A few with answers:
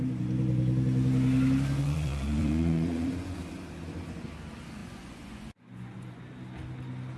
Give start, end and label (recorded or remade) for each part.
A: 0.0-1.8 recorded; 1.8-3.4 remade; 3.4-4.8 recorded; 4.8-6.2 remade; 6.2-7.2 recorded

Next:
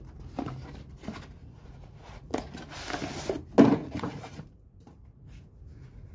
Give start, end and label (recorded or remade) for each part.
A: 0.0-1.4 recorded; 1.4-2.5 remade; 2.5-3.8 recorded; 3.8-6.1 remade

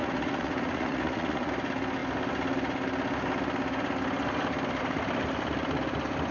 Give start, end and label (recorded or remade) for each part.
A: 0.0-1.5 remade; 1.5-6.3 recorded